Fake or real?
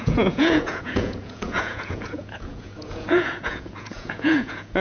fake